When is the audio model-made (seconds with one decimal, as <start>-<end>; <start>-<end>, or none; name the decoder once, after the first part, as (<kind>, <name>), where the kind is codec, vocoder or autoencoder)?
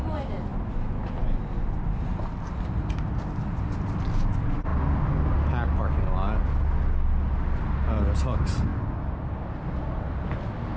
none